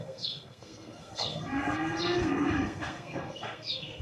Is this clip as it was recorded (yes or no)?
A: no